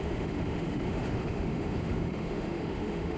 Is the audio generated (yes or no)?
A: yes